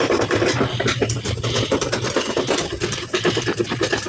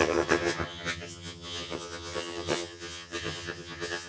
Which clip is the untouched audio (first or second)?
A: first